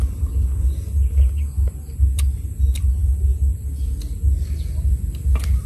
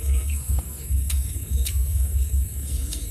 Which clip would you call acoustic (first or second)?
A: first